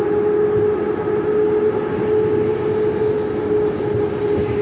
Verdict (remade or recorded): recorded